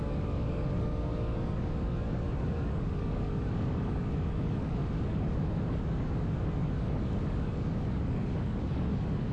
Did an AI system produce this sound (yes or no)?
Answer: yes